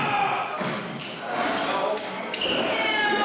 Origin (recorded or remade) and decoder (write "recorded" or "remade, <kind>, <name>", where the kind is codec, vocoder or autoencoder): recorded